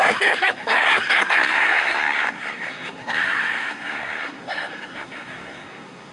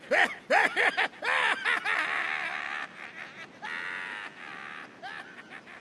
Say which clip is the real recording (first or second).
second